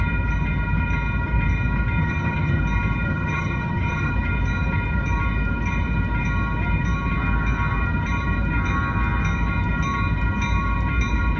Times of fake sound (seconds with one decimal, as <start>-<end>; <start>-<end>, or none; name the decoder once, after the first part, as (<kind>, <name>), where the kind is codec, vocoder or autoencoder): 2.0-2.6 (vocoder, HiFi-GAN); 3.1-4.1